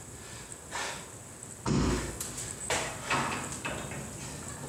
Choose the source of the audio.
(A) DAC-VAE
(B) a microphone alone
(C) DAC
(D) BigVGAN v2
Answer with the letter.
B